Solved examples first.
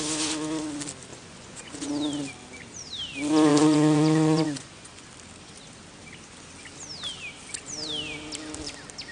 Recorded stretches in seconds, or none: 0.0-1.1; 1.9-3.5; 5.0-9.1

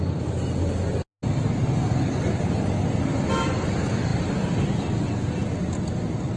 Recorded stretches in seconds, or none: 0.0-6.4

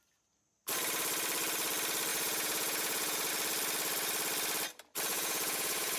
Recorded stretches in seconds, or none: 0.0-2.1; 3.3-5.1

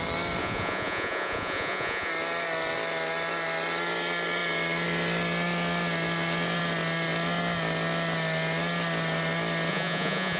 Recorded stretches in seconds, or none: 0.0-0.4; 2.1-9.7

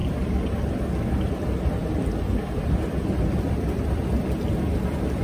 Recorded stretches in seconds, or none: 0.0-5.2

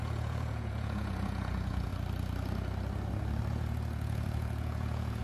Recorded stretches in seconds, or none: 1.9-3.5